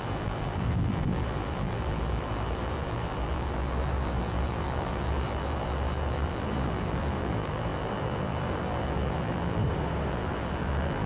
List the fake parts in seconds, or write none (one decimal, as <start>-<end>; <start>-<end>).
0.0-9.6; 10.1-11.1